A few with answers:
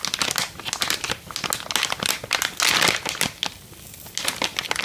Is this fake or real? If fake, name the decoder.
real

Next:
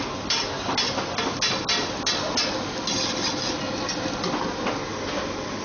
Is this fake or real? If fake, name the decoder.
real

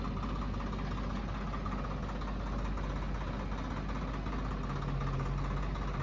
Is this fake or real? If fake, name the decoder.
real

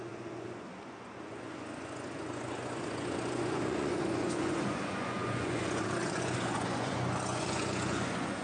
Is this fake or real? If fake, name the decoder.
fake, vocoder, Vocos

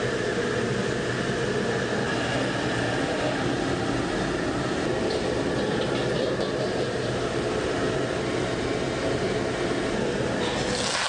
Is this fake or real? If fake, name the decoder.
real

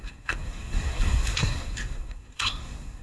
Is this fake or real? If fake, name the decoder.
fake, codec, SNAC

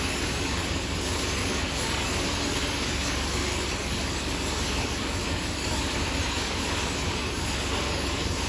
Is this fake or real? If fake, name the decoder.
fake, codec, DAC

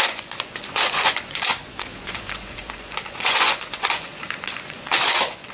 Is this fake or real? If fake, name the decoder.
fake, vocoder, Vocos